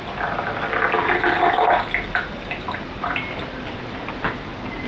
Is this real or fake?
real